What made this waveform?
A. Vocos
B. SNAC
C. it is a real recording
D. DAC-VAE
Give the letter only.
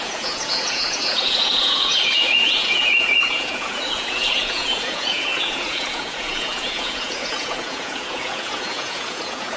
A